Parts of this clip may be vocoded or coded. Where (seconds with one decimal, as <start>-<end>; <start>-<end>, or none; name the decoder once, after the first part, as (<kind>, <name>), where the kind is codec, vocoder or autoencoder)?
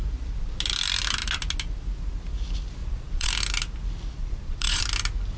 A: 2.8-3.3 (vocoder, Vocos); 4.2-4.8